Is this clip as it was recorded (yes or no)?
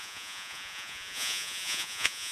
no